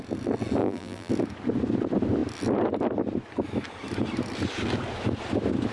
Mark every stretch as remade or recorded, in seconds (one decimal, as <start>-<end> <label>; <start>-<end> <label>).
0.0-0.6 recorded; 0.6-1.1 remade; 1.1-5.7 recorded